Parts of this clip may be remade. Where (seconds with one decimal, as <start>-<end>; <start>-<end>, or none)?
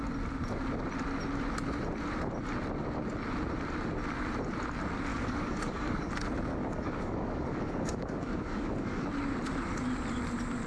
5.1-6.1; 6.5-9.1